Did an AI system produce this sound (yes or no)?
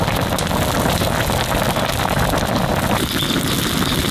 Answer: no